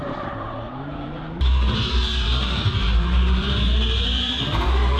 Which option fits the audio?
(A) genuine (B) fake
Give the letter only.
B